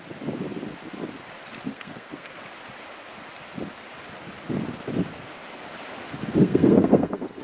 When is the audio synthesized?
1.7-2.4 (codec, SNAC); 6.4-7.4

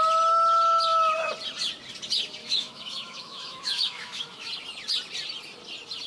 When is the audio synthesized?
2.4-4.5 (autoencoder, DAC-VAE)

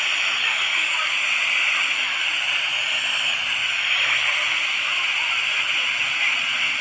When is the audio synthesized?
0.5-1.1 (codec, DAC)

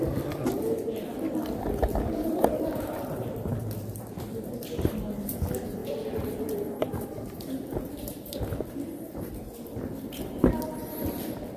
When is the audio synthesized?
1.6-3.5 (vocoder, BigVGAN v2); 5.8-10.6